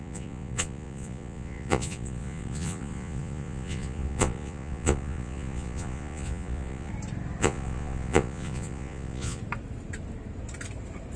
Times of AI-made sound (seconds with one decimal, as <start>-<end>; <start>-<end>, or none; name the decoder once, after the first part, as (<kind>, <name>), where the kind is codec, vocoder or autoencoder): 0.0-6.9 (vocoder, Vocos); 7.4-9.4